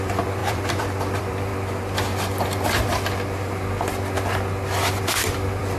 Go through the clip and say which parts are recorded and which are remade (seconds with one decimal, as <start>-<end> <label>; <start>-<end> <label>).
0.0-1.5 remade; 1.5-5.0 recorded; 5.0-5.8 remade